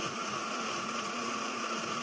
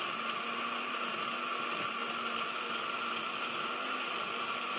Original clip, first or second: second